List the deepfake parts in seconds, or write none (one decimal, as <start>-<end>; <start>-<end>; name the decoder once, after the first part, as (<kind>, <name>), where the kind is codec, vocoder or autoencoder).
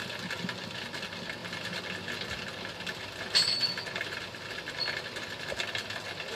none